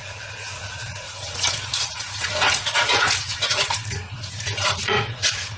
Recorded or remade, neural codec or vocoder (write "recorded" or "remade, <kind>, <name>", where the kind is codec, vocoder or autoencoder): remade, vocoder, Vocos